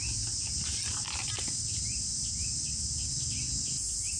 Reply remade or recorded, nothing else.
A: recorded